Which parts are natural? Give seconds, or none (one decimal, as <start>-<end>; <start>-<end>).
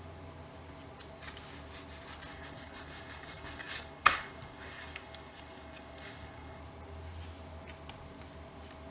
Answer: 0.0-2.3; 6.6-8.9